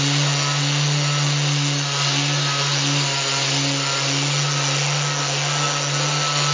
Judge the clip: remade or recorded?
recorded